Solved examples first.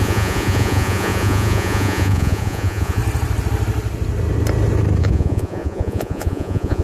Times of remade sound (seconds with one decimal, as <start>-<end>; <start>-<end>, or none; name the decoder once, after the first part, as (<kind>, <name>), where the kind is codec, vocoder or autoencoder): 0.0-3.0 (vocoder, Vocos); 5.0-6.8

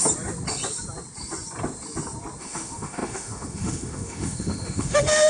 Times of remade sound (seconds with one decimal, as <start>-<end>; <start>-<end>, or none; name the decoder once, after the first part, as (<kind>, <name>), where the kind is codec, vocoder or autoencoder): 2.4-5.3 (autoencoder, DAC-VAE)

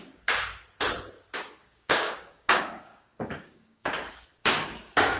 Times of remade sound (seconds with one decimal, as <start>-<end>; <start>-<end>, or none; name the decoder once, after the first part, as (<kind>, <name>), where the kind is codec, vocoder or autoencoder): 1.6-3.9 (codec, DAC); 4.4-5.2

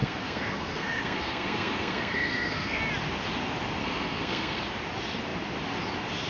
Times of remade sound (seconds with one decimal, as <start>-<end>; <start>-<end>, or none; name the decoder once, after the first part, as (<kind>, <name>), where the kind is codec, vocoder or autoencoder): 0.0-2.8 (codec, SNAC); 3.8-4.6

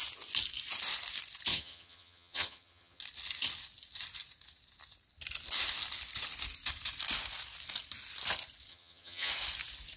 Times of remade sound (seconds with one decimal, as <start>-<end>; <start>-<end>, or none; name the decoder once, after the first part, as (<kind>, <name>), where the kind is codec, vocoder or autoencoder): 1.5-3.0 (vocoder, HiFi-GAN); 8.7-9.3